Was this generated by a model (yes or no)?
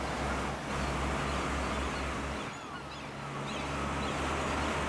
no